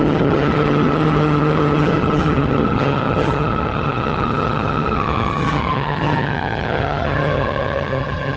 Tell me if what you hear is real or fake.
fake